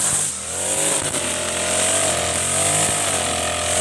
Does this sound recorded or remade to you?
recorded